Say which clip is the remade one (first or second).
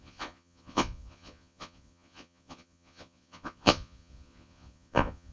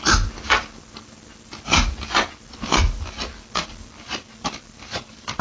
first